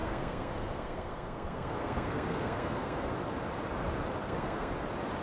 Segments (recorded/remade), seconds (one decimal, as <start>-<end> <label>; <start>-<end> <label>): 0.0-3.1 remade; 3.1-4.2 recorded; 4.2-4.7 remade; 4.7-5.2 recorded

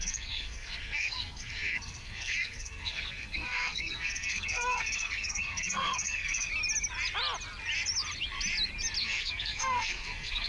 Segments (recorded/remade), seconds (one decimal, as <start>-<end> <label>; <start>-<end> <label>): 0.0-6.5 remade; 6.5-9.0 recorded; 9.0-10.5 remade